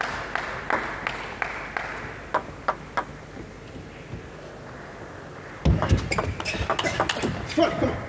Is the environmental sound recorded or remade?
recorded